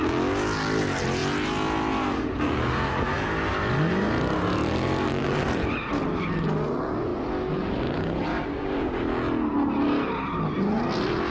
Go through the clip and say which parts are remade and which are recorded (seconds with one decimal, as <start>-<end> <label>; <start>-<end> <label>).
0.0-8.3 recorded; 8.3-9.0 remade; 9.0-11.3 recorded